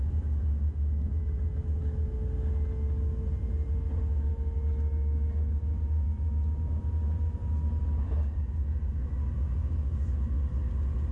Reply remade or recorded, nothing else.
recorded